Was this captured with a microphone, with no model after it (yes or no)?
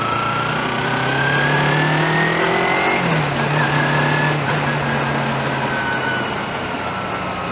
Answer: yes